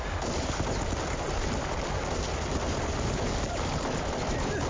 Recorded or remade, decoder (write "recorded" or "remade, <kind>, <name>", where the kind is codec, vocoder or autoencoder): recorded